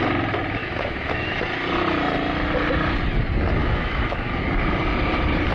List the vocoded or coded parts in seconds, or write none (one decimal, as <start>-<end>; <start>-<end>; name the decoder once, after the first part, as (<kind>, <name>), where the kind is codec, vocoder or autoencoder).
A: 0.6-1.4 (autoencoder, DAC-VAE); 3.6-4.4